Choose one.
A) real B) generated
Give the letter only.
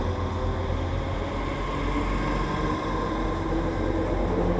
A